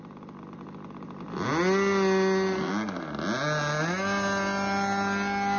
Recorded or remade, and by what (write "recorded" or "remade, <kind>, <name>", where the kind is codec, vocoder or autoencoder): recorded